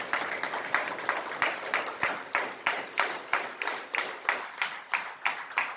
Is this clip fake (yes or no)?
yes